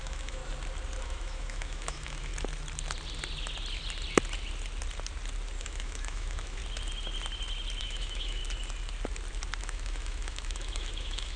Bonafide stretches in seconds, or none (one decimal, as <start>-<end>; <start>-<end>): 0.4-1.0; 2.3-5.6; 6.6-7.8; 8.4-9.6